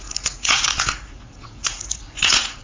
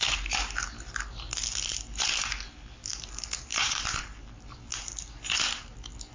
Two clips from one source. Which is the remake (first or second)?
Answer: first